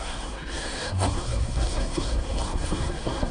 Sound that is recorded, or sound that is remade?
remade